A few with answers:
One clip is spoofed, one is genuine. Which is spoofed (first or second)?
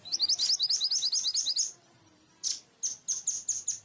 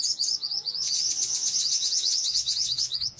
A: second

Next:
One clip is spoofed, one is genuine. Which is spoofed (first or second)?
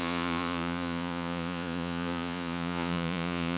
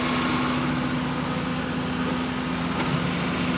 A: first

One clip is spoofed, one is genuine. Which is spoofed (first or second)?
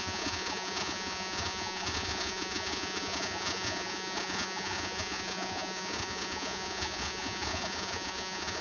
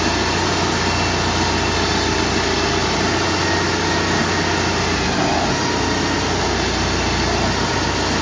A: first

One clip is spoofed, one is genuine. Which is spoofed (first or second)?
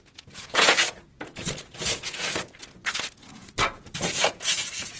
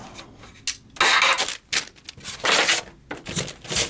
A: first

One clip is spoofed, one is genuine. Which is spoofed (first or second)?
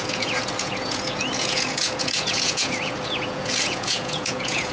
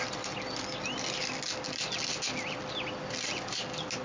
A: first